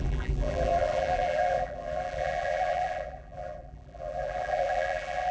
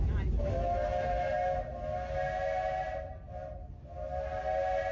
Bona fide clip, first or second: second